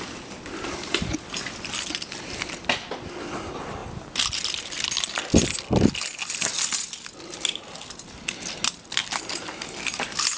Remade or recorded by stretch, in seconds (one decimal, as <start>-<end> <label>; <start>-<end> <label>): 0.0-10.4 recorded